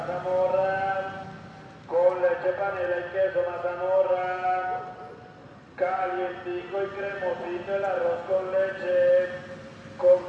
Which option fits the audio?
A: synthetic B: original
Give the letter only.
B